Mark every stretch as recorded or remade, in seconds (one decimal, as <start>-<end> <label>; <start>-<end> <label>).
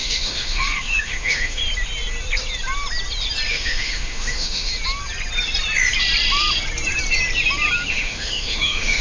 0.0-1.6 remade; 1.6-3.5 recorded; 3.5-4.7 remade; 4.7-7.9 recorded; 7.9-9.0 remade